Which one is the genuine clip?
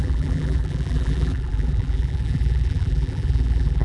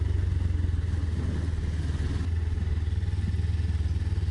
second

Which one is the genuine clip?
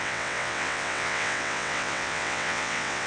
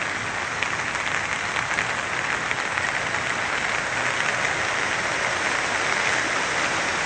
second